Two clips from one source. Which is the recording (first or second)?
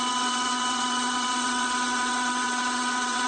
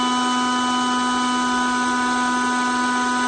second